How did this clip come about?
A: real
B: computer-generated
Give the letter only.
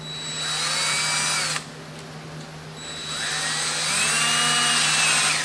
A